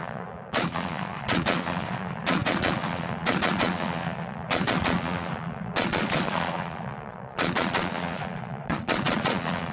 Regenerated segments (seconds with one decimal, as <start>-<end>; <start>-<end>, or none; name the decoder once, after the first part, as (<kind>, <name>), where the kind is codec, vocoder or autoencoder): 0.0-9.7 (vocoder, Vocos)

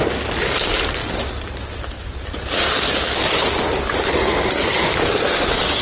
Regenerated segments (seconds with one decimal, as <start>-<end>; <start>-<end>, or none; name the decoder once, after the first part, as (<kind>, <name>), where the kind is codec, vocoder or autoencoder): none

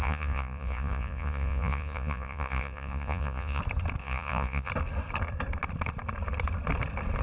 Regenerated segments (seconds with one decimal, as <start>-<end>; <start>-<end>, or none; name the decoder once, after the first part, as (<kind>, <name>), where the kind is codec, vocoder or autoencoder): 0.0-3.6 (vocoder, Vocos); 4.0-4.7

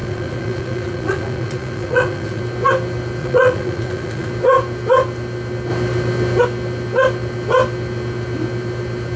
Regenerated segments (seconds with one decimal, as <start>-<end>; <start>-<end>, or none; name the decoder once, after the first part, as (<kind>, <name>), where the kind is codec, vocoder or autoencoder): 0.0-2.4 (vocoder, Vocos); 3.2-4.3